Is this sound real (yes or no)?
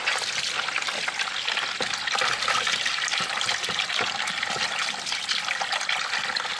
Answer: yes